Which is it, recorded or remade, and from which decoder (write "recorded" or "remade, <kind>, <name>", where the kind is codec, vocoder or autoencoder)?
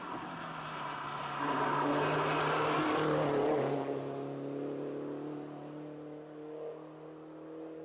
recorded